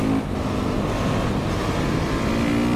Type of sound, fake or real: real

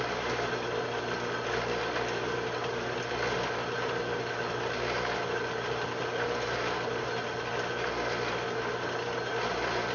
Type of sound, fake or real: real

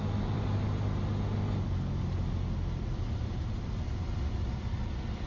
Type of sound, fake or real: real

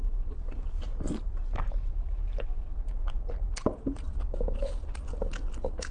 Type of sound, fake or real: real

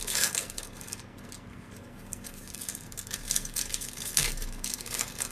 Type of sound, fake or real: fake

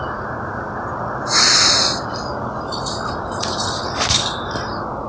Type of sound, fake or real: real